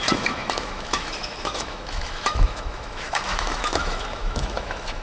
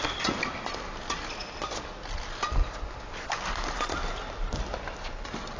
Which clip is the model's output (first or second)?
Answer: first